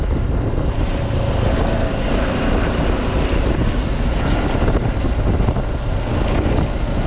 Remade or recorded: recorded